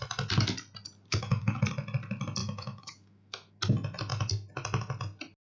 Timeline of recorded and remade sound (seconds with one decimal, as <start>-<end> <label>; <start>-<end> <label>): 0.0-1.1 recorded; 1.1-1.6 remade; 1.6-2.4 recorded; 2.4-3.6 remade; 3.6-5.5 recorded